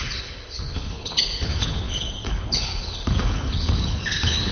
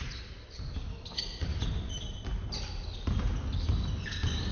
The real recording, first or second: second